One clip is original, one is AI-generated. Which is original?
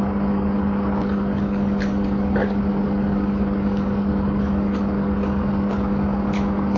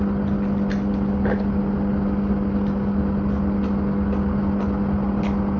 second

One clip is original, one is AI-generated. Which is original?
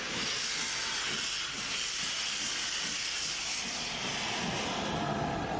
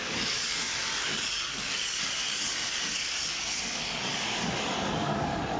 first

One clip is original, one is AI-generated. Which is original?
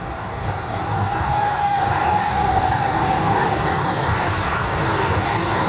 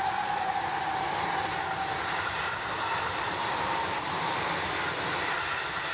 second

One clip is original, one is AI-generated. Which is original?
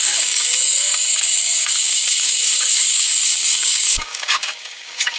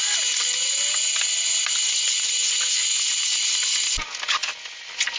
second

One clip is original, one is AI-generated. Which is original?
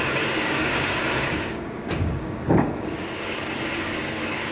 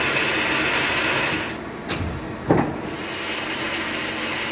second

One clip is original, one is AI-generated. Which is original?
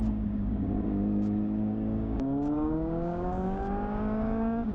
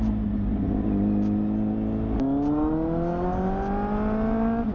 second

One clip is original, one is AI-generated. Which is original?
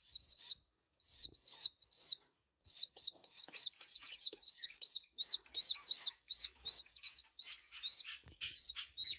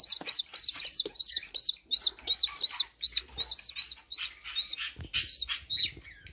second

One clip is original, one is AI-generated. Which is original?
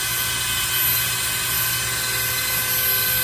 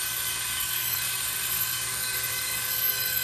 first